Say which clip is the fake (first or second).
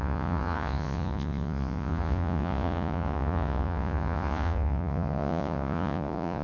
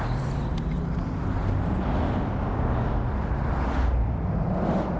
first